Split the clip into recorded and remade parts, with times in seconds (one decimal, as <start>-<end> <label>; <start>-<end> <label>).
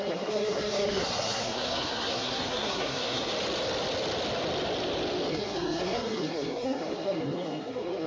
0.0-3.3 remade; 3.3-5.3 recorded; 5.3-8.1 remade